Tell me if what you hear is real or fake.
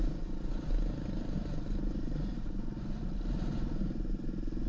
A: real